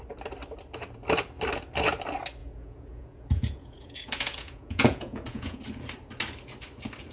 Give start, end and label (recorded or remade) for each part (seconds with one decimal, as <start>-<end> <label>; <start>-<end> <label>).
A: 0.0-2.4 recorded; 2.4-5.6 remade; 5.6-7.1 recorded